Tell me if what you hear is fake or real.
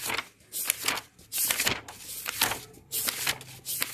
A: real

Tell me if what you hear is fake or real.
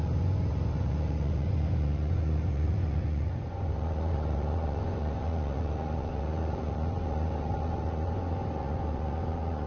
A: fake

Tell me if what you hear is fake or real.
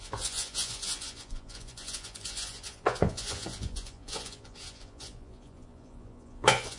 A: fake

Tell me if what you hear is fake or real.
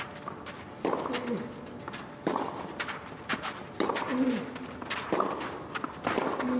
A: real